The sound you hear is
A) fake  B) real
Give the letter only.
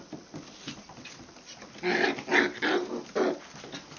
B